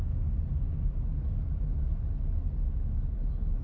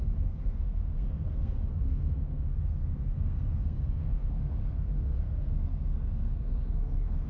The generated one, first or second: second